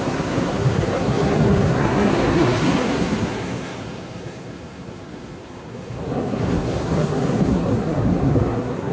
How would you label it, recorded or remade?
remade